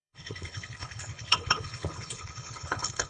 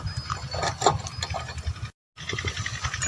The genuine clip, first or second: second